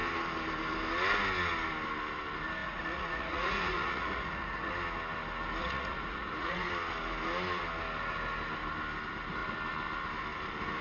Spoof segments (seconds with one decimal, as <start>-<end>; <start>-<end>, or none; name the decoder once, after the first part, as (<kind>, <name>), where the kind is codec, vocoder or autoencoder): 2.6-4.7 (vocoder, Vocos); 5.6-6.7